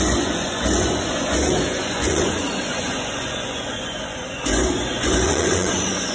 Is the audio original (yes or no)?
no